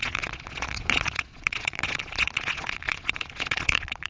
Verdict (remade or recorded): remade